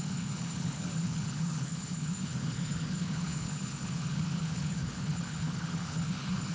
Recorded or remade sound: remade